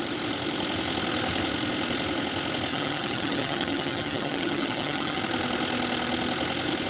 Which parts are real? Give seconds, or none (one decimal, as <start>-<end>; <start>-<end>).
0.0-2.7; 5.2-6.9